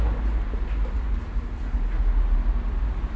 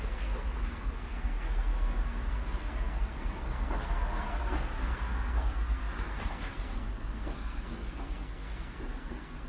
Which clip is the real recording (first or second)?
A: first